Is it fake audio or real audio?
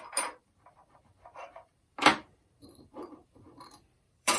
fake